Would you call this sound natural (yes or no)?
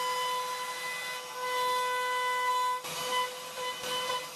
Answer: yes